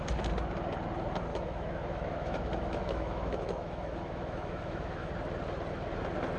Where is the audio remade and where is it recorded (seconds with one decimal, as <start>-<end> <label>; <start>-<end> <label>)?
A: 0.0-1.3 recorded; 1.3-5.1 remade; 5.1-6.4 recorded